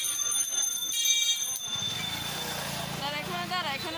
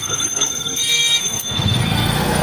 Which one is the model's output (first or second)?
second